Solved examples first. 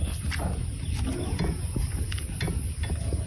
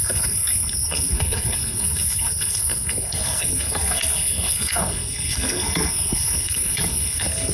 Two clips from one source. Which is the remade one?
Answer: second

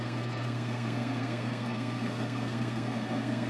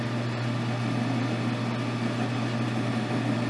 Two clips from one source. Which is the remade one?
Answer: first